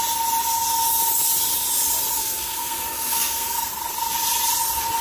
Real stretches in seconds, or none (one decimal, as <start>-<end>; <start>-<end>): 0.0-2.2; 3.7-5.0

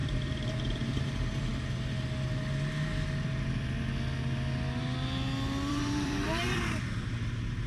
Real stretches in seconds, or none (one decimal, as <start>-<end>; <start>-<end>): 1.5-5.7

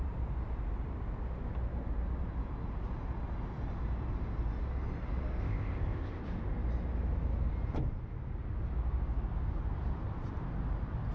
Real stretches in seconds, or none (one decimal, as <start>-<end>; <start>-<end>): 0.0-5.4; 6.2-11.1

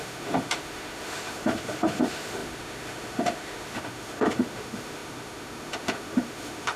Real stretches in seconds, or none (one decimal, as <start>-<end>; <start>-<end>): none

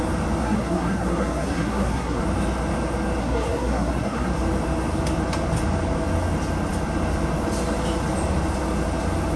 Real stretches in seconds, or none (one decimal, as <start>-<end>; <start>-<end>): 0.0-0.4; 2.2-3.2; 4.3-9.4

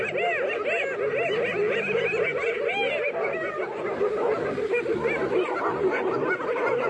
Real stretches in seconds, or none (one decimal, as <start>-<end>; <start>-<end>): 0.0-6.9

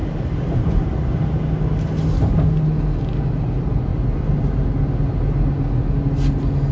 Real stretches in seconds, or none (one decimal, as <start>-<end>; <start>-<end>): 1.4-6.7

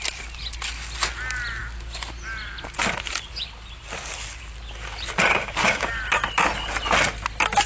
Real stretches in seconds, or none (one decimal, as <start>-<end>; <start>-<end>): 0.0-5.3; 5.9-7.7